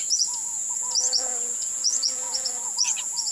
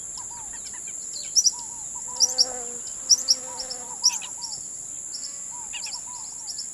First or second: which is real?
second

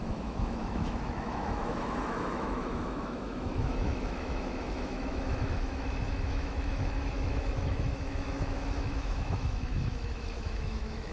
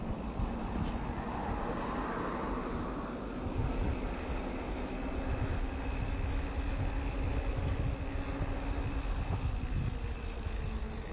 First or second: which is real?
second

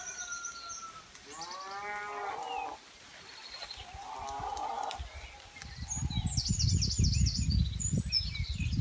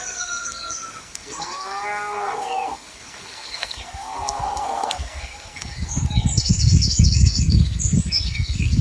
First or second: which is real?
first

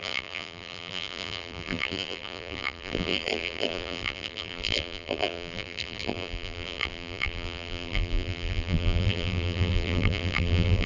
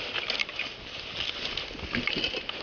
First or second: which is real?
second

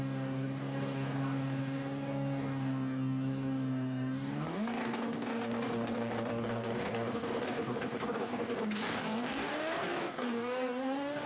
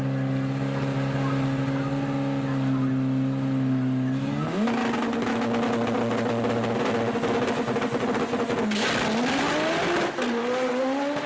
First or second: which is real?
second